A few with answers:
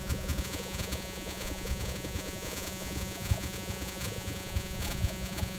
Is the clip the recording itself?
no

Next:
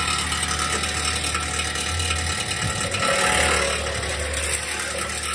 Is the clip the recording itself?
yes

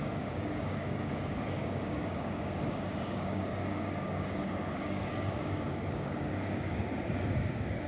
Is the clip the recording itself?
no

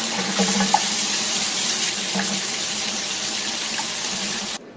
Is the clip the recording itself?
no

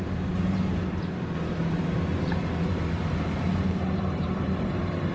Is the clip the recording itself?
no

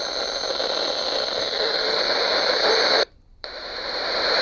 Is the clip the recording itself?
no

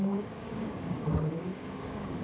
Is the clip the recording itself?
no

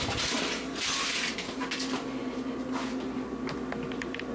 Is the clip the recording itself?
yes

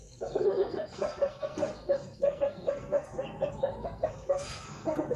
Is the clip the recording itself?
no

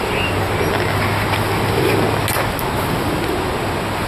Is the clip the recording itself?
yes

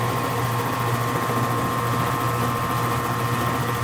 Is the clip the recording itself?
yes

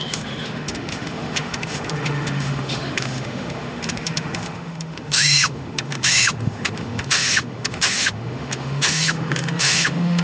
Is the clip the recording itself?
no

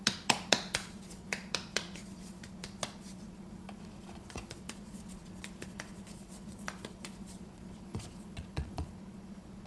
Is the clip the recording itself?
no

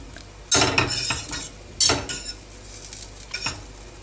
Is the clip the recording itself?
yes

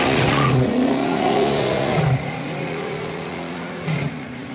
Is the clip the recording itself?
no